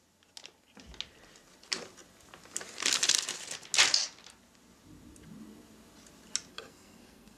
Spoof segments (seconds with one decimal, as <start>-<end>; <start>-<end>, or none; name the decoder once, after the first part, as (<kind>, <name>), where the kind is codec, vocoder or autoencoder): 6.5-7.4 (codec, SNAC)